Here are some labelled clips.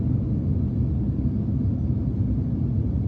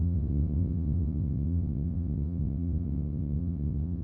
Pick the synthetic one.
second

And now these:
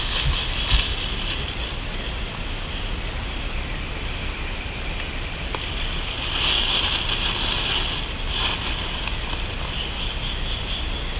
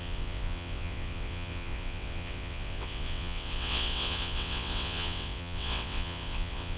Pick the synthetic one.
second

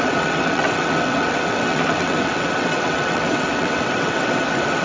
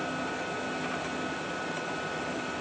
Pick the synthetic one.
first